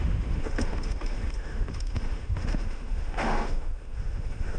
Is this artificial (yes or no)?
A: yes